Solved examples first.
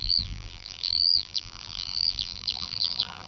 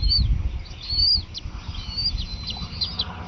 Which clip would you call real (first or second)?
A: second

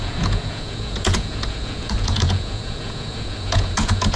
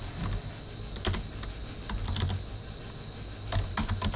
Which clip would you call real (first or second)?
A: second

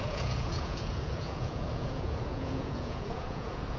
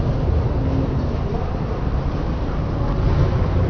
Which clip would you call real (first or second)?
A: second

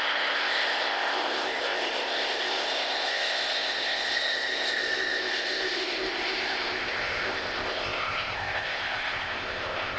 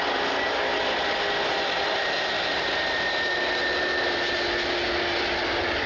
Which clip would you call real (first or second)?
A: second